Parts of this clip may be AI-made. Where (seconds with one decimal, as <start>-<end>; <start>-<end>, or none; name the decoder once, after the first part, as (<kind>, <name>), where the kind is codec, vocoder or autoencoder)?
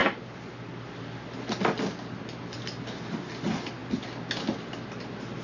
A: none